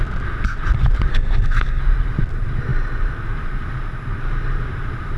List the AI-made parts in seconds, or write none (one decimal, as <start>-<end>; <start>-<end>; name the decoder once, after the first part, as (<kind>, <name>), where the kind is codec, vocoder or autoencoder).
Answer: 1.1-1.8 (codec, SNAC)